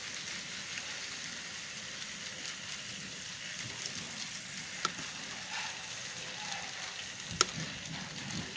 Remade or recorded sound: recorded